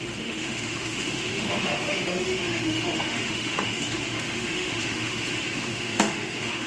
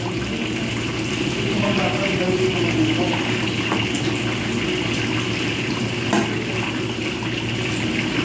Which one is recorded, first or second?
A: second